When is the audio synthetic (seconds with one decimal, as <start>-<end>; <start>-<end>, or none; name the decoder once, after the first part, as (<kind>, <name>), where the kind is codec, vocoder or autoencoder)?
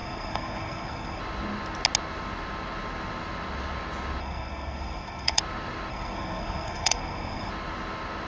0.0-1.2 (codec, SNAC); 4.2-5.4; 5.9-7.5